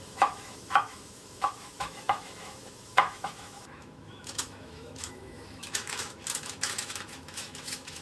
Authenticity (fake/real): fake